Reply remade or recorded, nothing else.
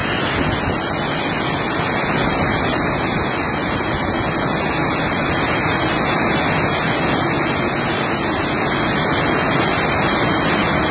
recorded